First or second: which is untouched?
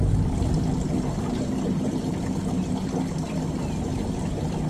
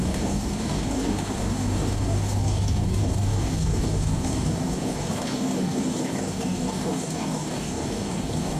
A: first